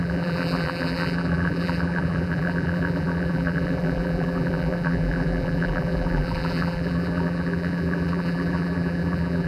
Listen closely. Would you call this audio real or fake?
fake